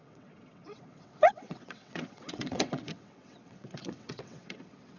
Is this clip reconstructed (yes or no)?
yes